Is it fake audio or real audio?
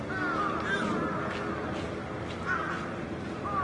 real